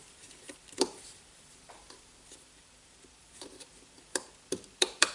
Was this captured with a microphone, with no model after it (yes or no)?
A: no